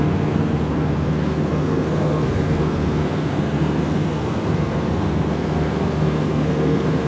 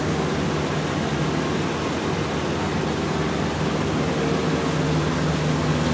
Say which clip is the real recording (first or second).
second